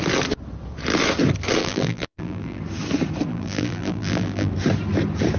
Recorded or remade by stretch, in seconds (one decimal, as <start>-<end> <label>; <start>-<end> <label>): 0.0-1.6 recorded; 1.6-2.6 remade; 2.6-3.3 recorded; 3.3-4.5 remade; 4.5-5.4 recorded